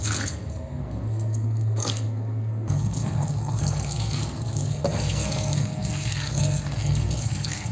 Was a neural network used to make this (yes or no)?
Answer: yes